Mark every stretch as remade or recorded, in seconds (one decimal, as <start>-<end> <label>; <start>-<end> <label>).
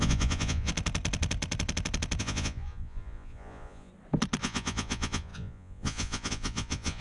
0.0-0.7 remade; 0.7-2.2 recorded; 2.2-3.9 remade; 3.9-4.4 recorded; 4.4-7.0 remade